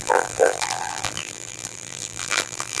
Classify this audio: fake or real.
fake